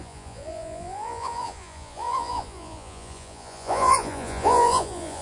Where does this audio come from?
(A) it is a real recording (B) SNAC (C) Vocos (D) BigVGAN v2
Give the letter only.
C